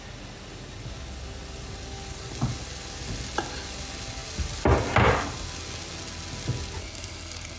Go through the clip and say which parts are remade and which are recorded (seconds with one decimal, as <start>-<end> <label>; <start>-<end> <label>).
0.0-6.8 recorded; 6.8-7.6 remade